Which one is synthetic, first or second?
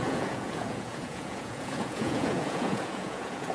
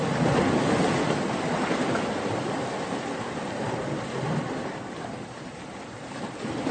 first